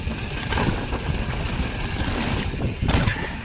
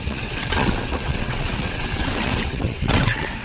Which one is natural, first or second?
first